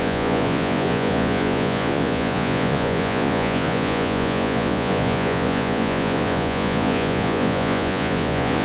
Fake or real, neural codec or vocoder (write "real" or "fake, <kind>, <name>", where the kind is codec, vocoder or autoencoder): fake, vocoder, Vocos